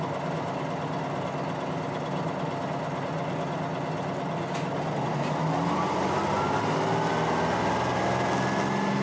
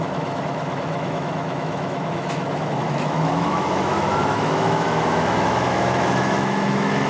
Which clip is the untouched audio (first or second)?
first